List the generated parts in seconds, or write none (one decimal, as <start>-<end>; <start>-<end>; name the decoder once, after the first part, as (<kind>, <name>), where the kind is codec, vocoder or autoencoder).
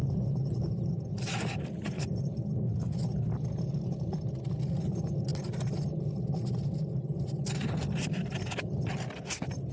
none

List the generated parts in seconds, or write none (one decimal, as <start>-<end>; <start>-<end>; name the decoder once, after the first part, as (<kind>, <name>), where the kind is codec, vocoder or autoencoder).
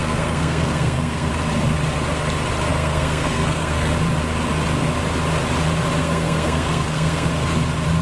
0.0-1.3 (codec, SNAC); 2.7-3.9; 6.0-7.3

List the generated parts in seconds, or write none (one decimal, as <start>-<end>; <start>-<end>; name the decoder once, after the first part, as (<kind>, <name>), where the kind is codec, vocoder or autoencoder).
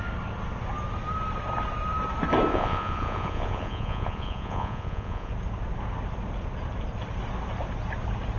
2.5-5.3 (vocoder, Vocos)